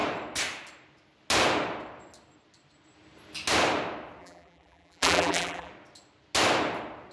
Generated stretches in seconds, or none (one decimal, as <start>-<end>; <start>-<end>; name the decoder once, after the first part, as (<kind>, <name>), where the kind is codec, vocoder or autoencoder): 4.2-5.7 (vocoder, BigVGAN v2)